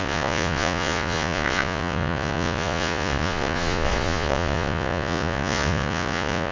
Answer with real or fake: fake